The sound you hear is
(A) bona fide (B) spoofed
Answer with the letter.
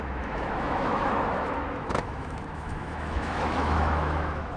B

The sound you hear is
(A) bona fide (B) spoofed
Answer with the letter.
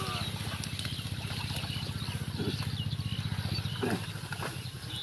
A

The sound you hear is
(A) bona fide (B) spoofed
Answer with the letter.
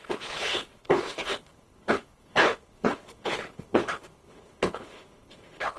B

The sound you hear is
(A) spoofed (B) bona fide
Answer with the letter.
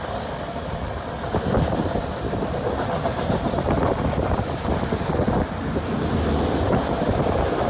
B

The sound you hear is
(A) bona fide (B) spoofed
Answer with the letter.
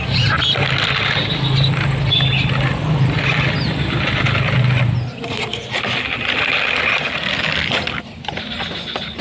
A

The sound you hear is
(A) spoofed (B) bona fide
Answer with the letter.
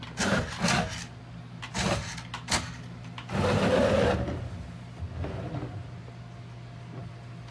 B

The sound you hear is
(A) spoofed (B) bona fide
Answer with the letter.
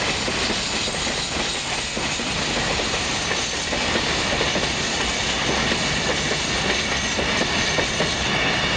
B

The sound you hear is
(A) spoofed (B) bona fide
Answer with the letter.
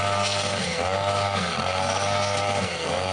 A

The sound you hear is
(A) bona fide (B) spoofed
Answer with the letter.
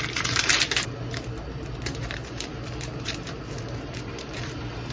B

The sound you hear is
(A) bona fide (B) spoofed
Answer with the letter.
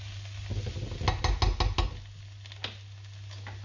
A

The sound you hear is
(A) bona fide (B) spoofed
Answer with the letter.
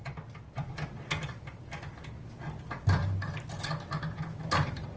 A